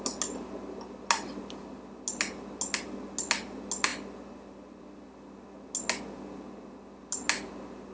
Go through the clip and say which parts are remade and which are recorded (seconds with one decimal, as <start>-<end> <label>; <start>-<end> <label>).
0.0-7.9 recorded